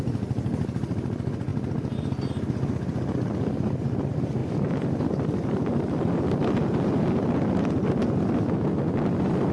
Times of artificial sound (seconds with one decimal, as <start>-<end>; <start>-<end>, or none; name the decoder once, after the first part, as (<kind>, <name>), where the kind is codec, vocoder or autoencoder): none